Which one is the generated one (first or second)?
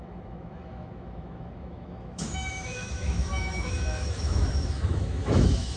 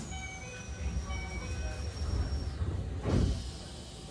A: first